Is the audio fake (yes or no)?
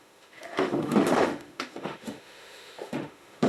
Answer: yes